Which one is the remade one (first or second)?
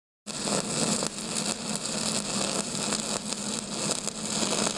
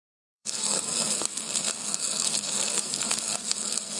second